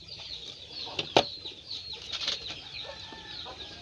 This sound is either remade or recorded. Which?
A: recorded